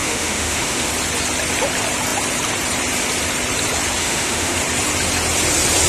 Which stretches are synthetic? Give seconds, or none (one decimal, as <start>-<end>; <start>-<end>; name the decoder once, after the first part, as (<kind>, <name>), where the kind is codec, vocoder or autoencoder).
0.0-0.9 (autoencoder, DAC-VAE); 4.0-4.6